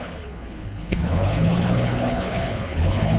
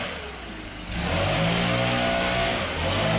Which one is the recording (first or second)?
second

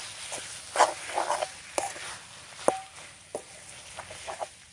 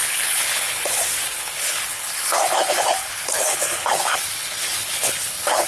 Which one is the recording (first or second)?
first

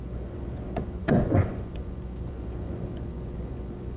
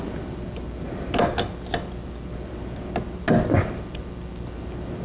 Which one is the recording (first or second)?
second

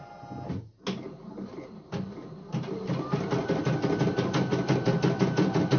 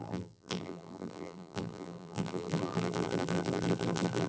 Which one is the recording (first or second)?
first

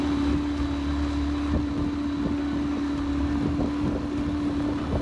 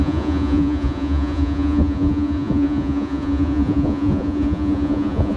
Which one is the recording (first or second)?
first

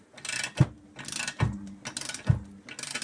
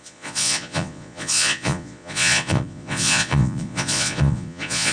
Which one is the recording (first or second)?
first